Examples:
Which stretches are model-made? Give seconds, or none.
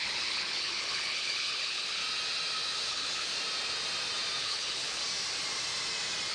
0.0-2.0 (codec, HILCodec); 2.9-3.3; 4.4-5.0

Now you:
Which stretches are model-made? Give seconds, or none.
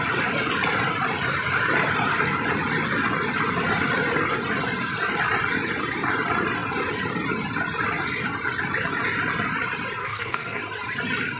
10.0-10.6 (codec, SNAC)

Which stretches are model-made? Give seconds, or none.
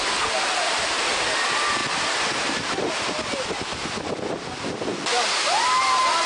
none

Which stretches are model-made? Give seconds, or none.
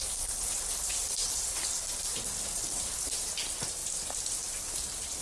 0.9-2.3 (vocoder, BigVGAN v2)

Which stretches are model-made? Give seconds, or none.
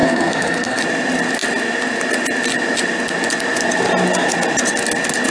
0.0-0.8 (codec, SNAC)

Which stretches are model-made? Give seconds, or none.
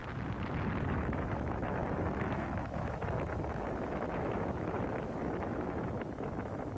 0.8-6.8 (autoencoder, DAC-VAE)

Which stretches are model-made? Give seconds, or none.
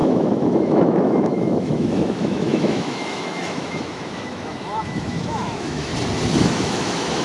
0.0-5.9 (autoencoder, DAC-VAE); 6.5-7.2